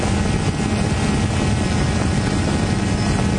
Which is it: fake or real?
real